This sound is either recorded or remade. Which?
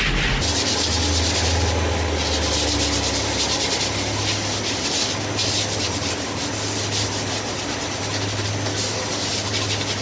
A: recorded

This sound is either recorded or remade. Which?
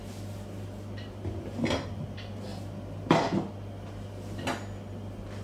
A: recorded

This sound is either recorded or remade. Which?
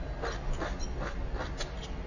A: recorded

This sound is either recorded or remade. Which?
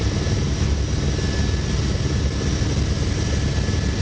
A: recorded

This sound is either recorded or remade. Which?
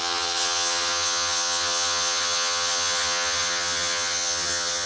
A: remade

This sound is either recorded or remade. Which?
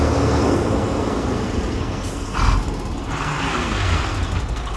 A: remade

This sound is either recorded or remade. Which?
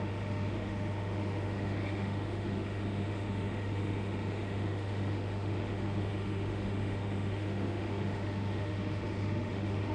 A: remade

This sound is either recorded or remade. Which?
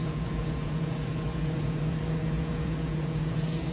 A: remade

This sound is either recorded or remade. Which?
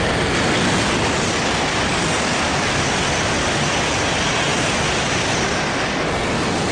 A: recorded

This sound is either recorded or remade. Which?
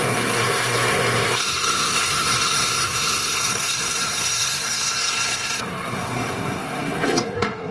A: remade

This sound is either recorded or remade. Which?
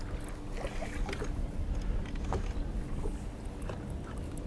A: recorded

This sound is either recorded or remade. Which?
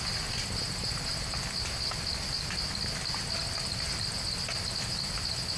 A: recorded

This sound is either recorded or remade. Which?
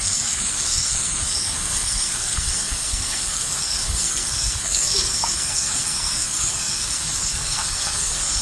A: remade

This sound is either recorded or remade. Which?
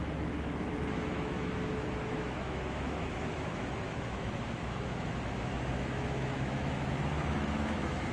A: remade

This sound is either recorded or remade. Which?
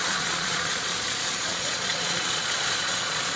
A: remade